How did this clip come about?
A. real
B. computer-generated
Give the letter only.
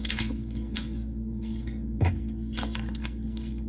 B